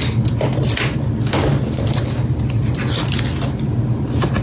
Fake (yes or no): no